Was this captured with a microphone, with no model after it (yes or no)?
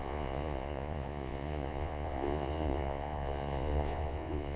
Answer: no